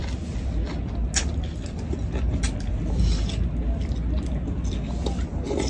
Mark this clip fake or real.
real